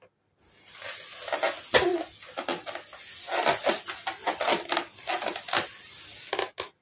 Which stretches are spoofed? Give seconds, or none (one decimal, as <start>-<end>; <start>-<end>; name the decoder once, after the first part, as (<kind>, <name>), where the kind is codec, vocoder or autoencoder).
none